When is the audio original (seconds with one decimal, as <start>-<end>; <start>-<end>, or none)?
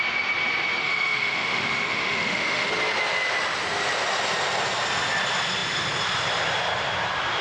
0.0-0.8; 2.7-7.4